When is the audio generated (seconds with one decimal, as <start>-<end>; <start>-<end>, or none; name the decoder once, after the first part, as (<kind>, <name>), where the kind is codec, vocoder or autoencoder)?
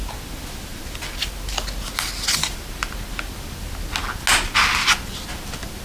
none